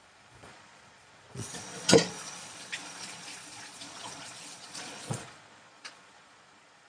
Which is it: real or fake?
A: fake